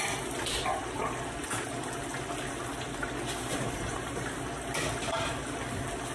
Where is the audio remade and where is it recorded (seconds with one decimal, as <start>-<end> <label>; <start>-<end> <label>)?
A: 0.0-3.5 recorded; 3.5-4.1 remade; 4.1-6.1 recorded